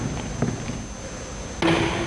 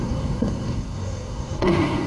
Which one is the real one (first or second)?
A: first